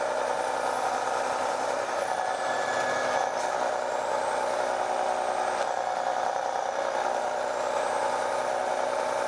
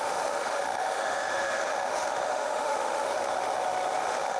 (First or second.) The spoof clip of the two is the second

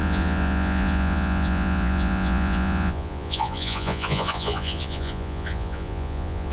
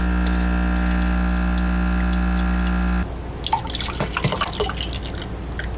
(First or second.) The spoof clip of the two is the first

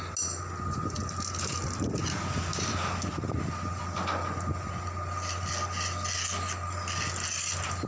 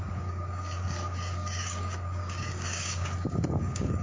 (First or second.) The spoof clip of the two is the second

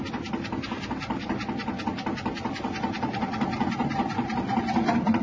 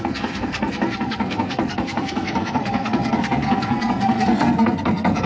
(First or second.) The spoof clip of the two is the second